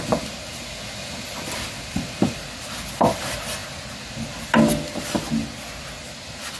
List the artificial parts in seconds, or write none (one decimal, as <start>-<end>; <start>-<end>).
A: none